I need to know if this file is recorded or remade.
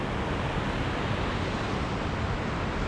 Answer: recorded